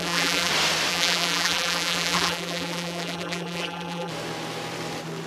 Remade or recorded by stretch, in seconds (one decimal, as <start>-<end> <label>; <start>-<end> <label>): 0.0-0.5 remade; 0.5-0.9 recorded; 0.9-4.1 remade; 4.1-5.3 recorded